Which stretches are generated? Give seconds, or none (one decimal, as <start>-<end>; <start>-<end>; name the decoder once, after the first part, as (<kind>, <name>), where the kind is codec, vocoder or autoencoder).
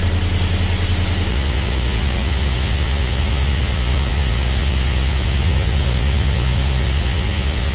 1.3-7.7 (vocoder, Vocos)